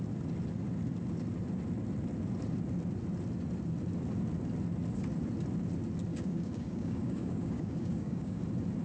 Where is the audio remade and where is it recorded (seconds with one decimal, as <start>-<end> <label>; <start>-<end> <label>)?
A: 0.0-6.1 recorded; 6.1-8.4 remade; 8.4-8.8 recorded